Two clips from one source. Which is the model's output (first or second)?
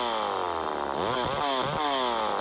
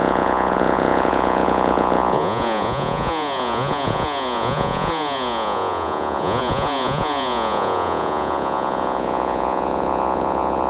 second